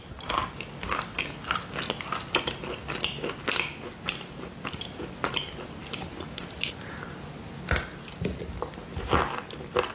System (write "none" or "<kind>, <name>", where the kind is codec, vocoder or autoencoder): none